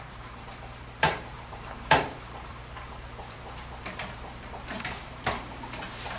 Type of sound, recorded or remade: remade